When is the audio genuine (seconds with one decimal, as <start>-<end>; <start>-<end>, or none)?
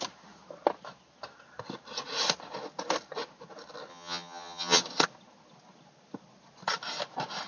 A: 0.0-3.9; 4.8-7.5